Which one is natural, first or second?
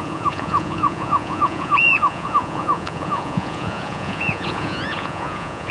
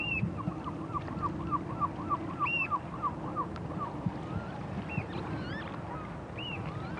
second